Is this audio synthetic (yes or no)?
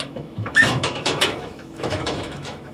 yes